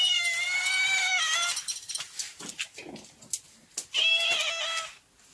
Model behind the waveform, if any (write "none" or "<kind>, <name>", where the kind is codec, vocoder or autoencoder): none